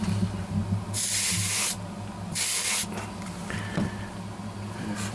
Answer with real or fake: real